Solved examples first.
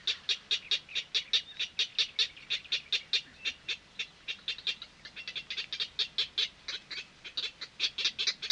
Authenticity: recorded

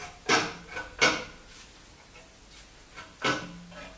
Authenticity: recorded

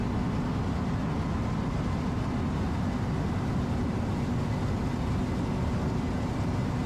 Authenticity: recorded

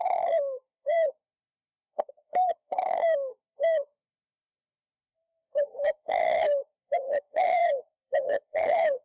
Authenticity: remade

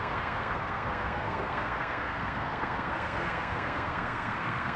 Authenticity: remade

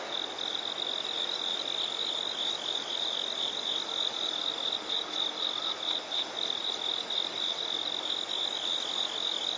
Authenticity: recorded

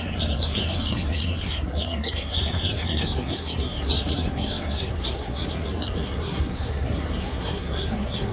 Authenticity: remade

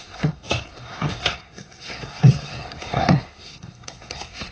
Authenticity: remade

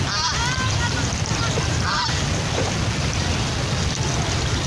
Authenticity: recorded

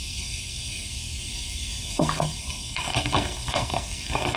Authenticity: remade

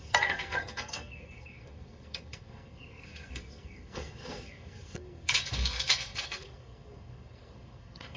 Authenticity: remade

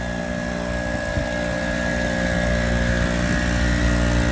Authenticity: recorded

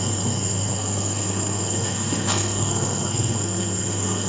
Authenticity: remade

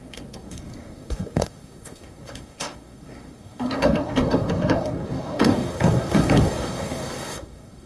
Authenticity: remade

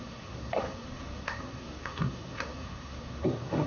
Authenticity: remade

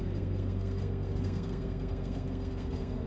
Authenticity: remade